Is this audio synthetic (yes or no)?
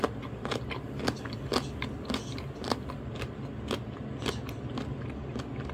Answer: no